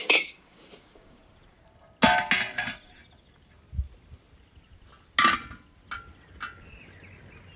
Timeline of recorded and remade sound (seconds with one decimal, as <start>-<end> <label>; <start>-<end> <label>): 0.0-1.2 remade; 1.2-7.6 recorded